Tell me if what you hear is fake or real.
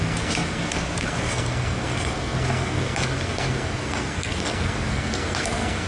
fake